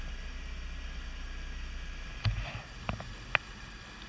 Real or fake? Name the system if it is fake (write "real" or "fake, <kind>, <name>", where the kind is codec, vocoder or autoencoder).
real